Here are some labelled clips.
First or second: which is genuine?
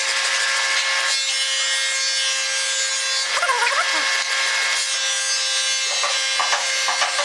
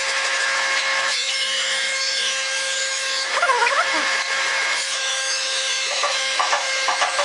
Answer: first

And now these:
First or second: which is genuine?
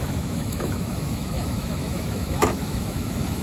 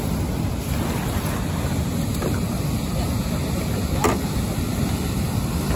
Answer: second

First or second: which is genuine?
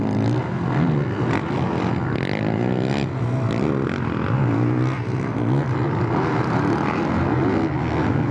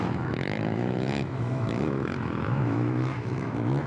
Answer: first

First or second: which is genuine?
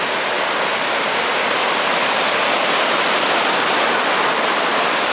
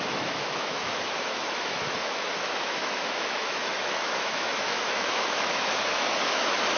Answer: first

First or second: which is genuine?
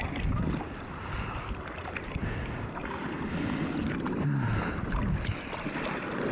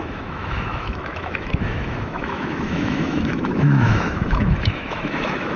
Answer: first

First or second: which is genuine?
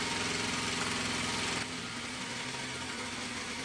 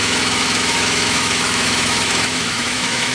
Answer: first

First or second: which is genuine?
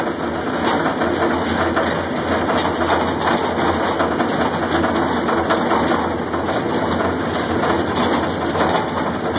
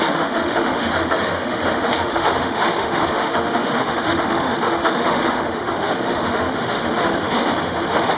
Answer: first